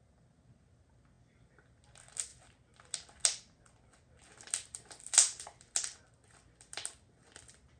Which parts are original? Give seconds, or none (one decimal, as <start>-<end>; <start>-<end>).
0.0-7.8